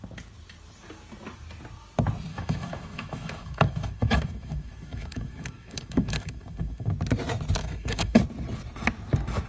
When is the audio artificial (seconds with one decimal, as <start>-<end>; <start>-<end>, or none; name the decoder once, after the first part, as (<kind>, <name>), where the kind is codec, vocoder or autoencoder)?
2.3-6.9 (autoencoder, DAC-VAE); 7.6-8.2